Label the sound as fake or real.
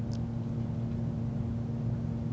real